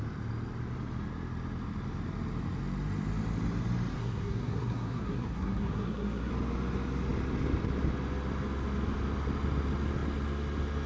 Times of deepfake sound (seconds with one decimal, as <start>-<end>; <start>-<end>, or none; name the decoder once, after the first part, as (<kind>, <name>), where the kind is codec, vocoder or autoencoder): 3.9-6.3 (codec, SNAC)